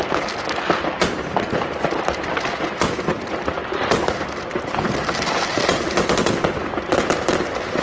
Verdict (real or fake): real